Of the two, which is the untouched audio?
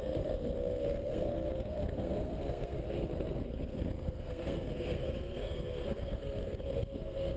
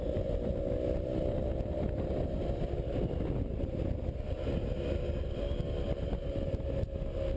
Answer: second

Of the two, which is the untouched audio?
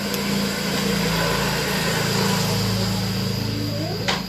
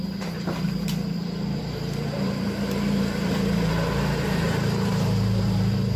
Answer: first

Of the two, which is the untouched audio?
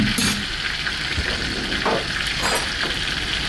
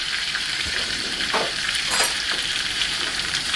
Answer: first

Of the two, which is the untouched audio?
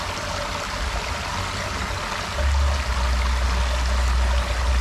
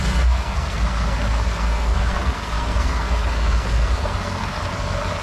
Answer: first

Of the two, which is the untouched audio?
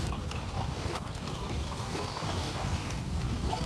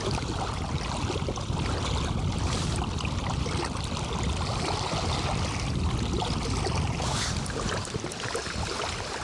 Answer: second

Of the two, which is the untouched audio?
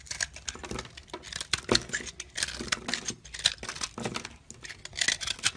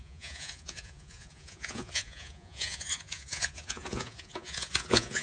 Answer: first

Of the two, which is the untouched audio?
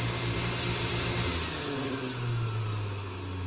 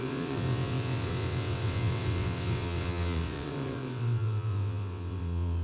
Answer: first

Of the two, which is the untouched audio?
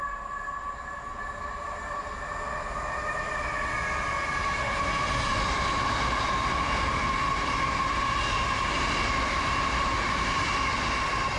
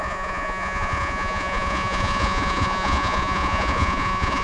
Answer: first